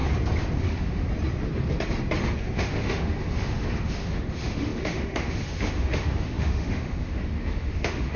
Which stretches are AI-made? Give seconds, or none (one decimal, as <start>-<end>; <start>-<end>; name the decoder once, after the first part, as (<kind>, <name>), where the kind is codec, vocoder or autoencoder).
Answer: 0.6-1.0 (autoencoder, DAC-VAE); 2.4-8.2